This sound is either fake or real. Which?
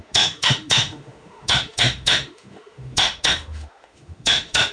fake